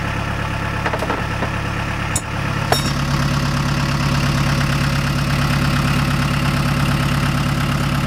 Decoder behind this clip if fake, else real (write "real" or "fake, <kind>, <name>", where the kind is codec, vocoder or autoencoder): real